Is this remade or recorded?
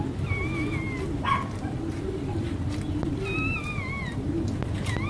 recorded